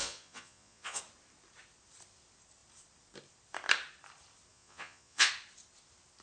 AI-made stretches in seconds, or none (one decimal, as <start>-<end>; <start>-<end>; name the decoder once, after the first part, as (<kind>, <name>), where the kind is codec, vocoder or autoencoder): 0.0-1.0 (vocoder, Vocos); 4.5-5.3